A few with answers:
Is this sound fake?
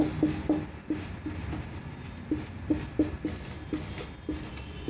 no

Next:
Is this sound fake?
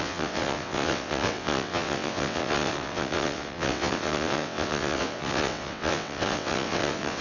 yes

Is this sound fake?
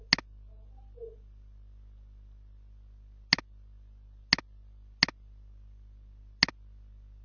no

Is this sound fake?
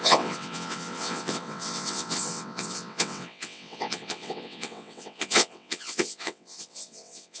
yes